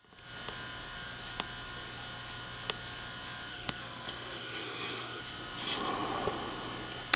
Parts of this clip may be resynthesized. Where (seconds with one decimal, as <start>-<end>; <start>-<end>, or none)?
3.5-5.2